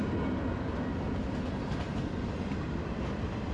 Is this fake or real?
real